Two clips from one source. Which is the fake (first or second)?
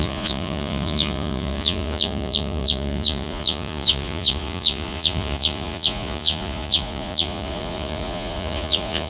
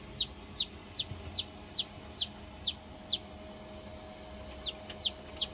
first